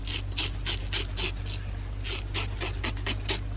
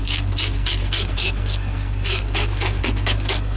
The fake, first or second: second